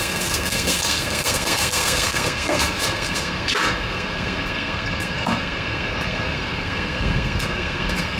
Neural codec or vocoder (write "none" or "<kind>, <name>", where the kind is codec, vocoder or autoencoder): codec, SNAC